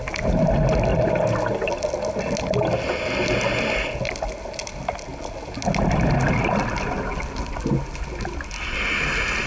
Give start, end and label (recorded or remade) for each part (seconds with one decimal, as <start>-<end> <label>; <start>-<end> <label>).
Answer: 0.0-9.5 recorded